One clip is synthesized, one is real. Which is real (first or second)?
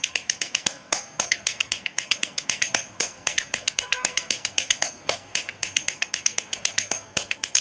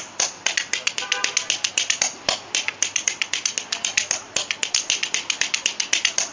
second